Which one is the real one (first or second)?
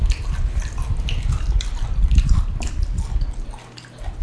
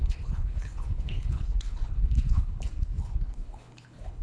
first